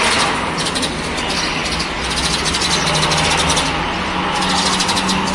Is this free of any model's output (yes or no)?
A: yes